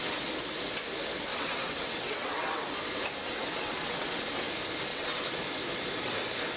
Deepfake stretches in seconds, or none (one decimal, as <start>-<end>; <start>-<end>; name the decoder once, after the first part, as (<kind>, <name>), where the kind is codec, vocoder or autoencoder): 1.3-2.6 (vocoder, WaveNeXt); 3.2-4.5; 4.9-5.4